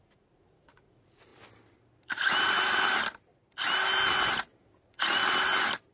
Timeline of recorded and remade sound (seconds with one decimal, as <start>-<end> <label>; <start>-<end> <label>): 0.0-1.3 remade; 1.3-4.8 recorded; 4.8-5.2 remade; 5.2-5.9 recorded